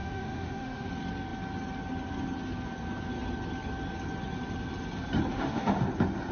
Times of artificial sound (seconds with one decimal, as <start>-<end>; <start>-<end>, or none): 0.0-0.9; 5.3-5.8